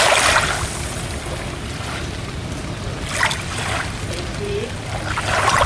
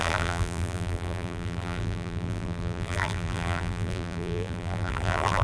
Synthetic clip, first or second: second